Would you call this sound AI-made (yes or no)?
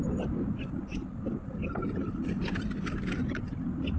no